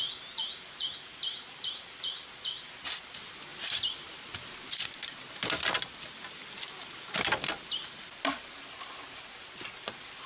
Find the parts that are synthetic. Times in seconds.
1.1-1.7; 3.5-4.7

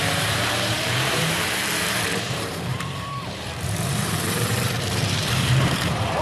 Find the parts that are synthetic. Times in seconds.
0.0-6.2

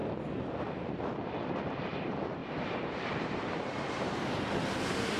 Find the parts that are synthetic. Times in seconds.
2.4-4.5

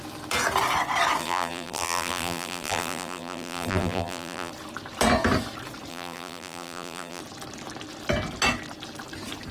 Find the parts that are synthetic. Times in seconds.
1.2-4.5; 5.9-7.2

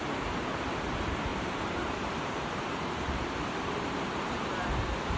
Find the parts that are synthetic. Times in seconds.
1.3-4.4

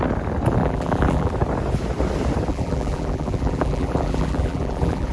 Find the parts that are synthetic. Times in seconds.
0.6-1.3; 2.5-5.1